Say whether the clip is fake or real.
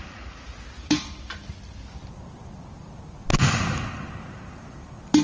real